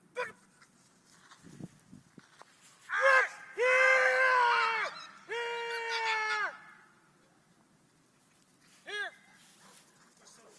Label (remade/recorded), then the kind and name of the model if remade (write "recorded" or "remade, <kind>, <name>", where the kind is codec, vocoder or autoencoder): recorded